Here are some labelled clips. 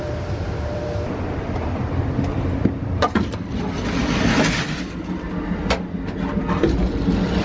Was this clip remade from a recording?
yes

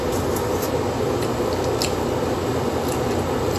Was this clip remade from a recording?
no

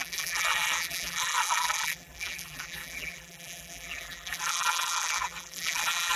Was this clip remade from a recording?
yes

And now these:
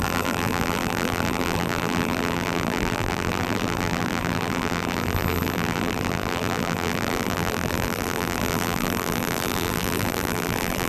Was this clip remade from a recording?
yes